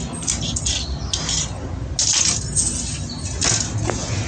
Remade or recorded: recorded